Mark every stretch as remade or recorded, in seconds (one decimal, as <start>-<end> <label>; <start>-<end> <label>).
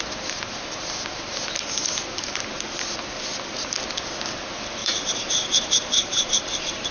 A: 0.0-4.8 recorded; 4.8-6.9 remade